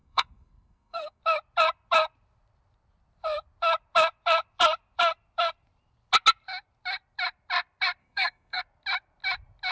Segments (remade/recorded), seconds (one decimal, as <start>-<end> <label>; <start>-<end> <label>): 0.0-1.2 remade; 1.2-8.0 recorded; 8.0-8.6 remade; 8.6-9.7 recorded